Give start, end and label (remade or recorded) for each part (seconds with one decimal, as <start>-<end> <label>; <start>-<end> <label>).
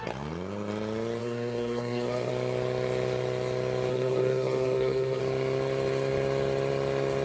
0.0-1.2 recorded; 1.2-2.3 remade; 2.3-3.9 recorded; 3.9-5.2 remade; 5.2-7.2 recorded